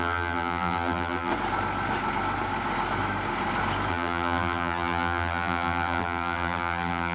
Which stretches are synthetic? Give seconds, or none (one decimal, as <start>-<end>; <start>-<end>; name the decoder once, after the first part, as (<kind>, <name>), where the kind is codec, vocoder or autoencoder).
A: 0.0-1.3 (vocoder, BigVGAN v2); 3.9-7.1